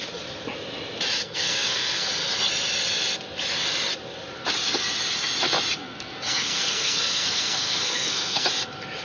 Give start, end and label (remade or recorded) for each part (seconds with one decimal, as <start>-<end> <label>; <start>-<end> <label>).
0.0-1.2 recorded; 1.2-2.1 remade; 2.1-5.8 recorded; 5.8-8.5 remade; 8.5-9.0 recorded